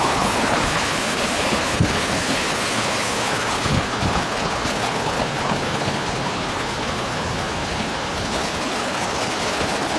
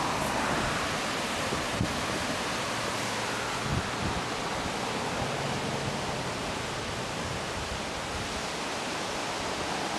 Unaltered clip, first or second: second